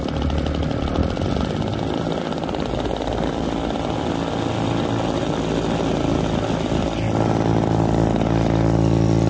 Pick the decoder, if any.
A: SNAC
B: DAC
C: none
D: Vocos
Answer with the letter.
C